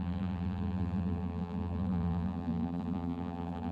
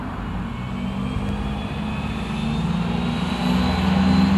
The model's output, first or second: first